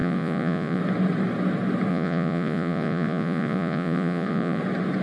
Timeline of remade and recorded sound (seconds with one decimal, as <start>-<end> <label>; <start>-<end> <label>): 0.0-0.8 remade; 0.8-1.9 recorded; 1.9-4.6 remade; 4.6-5.0 recorded